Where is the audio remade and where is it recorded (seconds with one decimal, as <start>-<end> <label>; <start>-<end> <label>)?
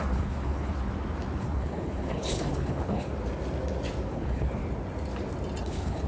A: 0.0-0.7 remade; 0.7-1.4 recorded; 1.4-3.1 remade; 3.1-4.1 recorded; 4.1-4.6 remade; 4.6-5.6 recorded; 5.6-6.1 remade